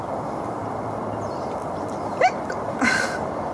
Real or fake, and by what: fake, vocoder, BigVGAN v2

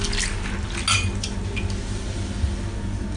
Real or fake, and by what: real